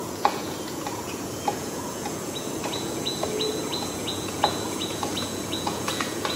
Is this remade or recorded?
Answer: remade